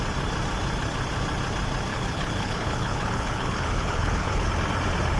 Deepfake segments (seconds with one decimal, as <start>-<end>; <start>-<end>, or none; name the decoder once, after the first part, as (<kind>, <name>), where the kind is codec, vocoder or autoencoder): 1.9-4.5 (codec, HILCodec)